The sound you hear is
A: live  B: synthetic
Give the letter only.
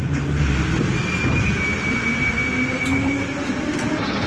A